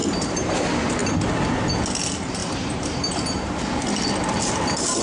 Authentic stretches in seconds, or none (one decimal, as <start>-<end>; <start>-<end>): 0.6-2.4; 3.5-5.0